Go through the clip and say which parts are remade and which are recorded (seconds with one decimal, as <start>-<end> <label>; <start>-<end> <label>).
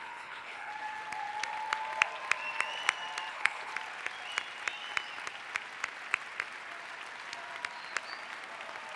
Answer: 0.0-0.7 remade; 0.7-3.3 recorded; 3.3-3.7 remade; 3.7-9.0 recorded